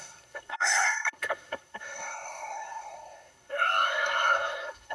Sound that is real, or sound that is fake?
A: fake